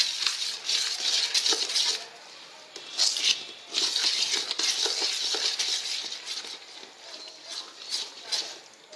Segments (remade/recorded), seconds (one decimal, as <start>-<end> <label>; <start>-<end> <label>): 0.0-9.0 recorded